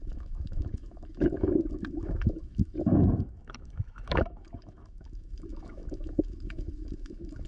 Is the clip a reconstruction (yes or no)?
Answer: yes